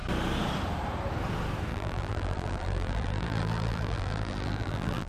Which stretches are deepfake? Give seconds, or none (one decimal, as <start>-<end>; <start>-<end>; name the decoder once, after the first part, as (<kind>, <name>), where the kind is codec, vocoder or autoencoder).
1.7-5.1 (vocoder, BigVGAN v2)